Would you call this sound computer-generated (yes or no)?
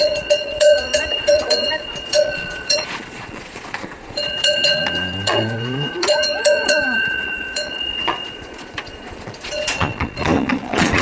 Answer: yes